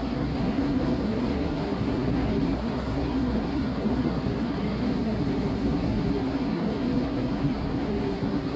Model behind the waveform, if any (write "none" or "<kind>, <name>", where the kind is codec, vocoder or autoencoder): codec, SNAC